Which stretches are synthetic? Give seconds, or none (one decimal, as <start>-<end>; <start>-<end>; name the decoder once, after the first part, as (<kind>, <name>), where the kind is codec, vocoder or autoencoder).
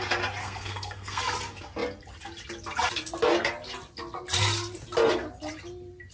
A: 0.4-1.2 (codec, SNAC)